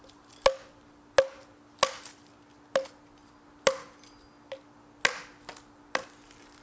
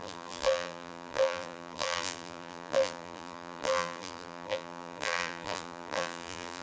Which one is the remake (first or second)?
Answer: second